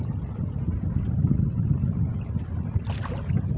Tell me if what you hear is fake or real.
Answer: real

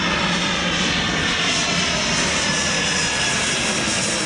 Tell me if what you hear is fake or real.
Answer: real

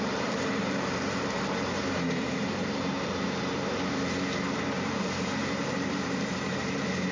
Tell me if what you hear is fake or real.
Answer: fake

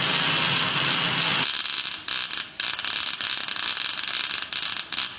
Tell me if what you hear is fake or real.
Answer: real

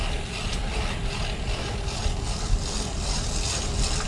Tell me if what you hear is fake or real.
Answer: real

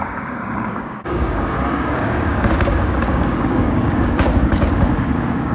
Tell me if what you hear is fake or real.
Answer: fake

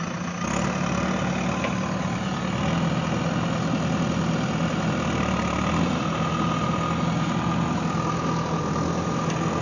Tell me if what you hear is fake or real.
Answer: real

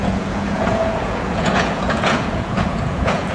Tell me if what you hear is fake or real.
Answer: fake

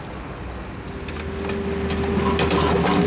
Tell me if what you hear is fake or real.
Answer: real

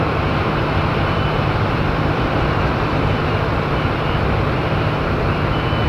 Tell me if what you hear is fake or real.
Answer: fake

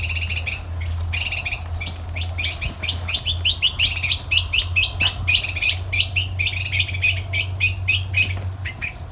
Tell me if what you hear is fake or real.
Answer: real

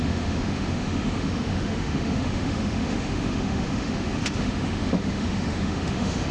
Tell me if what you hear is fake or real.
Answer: fake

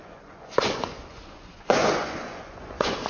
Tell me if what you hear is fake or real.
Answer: fake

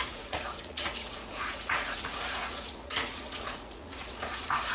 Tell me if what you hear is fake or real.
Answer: fake